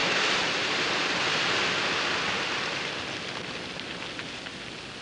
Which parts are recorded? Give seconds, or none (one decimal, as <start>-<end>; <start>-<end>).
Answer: 1.1-5.0